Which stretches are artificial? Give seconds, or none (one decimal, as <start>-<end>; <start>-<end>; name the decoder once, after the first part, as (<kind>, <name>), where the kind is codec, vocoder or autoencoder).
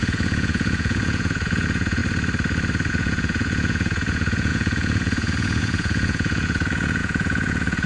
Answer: 0.0-2.0 (vocoder, Vocos); 2.9-7.9